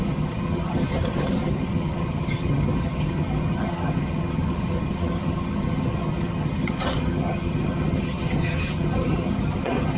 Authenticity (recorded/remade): remade